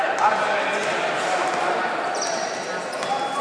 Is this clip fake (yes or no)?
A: no